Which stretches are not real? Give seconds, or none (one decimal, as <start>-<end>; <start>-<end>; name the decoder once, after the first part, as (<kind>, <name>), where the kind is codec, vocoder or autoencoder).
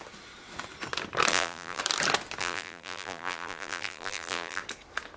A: 1.3-1.8 (vocoder, BigVGAN v2); 2.4-4.6